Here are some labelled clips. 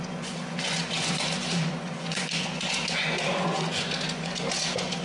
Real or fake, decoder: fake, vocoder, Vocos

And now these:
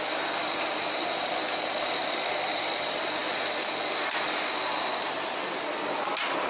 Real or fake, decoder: real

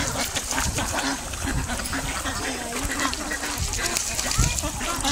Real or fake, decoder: real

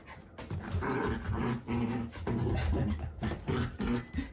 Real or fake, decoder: real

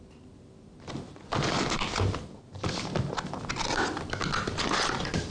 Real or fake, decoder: real